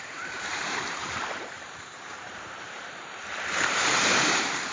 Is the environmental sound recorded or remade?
remade